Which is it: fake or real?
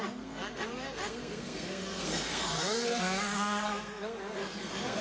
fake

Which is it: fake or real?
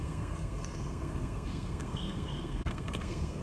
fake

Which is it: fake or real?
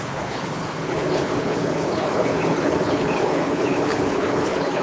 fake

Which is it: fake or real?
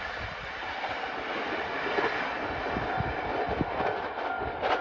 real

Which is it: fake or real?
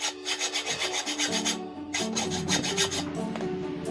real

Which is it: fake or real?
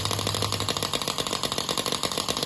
real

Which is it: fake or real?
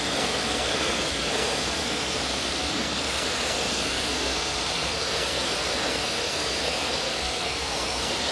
fake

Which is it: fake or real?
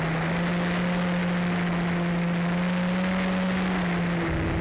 real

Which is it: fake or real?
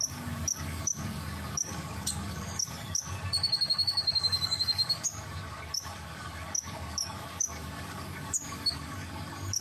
fake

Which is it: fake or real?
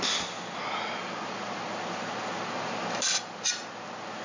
real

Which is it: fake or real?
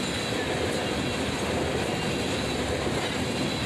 real